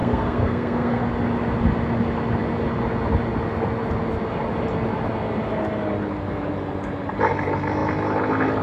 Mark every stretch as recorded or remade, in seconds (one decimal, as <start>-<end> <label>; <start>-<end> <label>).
0.0-1.0 remade; 1.0-8.6 recorded